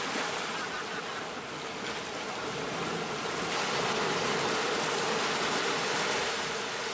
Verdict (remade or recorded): recorded